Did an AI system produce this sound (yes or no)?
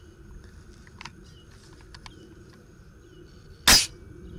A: no